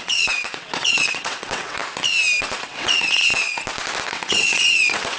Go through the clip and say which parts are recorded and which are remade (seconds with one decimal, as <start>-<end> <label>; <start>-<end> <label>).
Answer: 0.0-1.8 remade; 1.8-2.4 recorded; 2.4-3.3 remade; 3.3-4.0 recorded; 4.0-5.2 remade

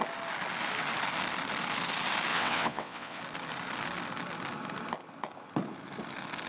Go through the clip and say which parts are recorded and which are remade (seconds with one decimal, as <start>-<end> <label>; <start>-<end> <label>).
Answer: 0.0-2.3 recorded; 2.3-3.2 remade; 3.2-6.5 recorded

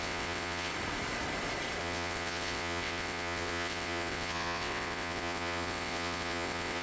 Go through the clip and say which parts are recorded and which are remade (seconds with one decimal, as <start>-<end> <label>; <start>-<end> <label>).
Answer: 0.0-0.7 remade; 0.7-1.8 recorded; 1.8-6.8 remade

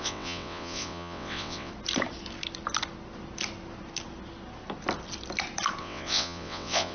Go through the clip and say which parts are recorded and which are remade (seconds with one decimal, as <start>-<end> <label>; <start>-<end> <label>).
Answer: 0.0-1.7 remade; 1.7-5.8 recorded; 5.8-6.9 remade

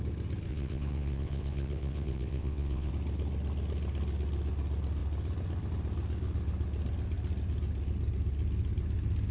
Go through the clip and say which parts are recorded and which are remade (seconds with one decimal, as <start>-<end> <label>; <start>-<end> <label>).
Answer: 0.0-0.5 recorded; 0.5-2.9 remade; 2.9-9.3 recorded

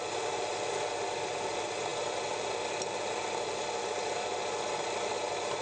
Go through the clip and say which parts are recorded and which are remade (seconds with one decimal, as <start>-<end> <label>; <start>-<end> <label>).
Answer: 0.0-5.6 recorded

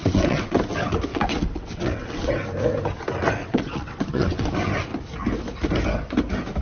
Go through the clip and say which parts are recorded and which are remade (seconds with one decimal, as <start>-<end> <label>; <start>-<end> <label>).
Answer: 0.0-0.6 remade; 0.6-1.1 recorded; 1.1-2.3 remade; 2.3-3.4 recorded; 3.4-4.5 remade; 4.5-6.6 recorded